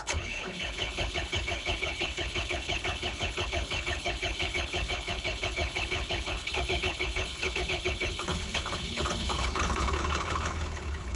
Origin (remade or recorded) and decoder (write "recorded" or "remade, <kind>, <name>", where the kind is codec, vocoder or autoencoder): remade, codec, HILCodec